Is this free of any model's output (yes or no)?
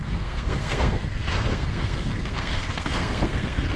no